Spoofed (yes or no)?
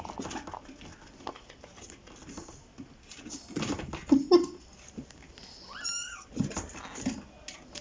no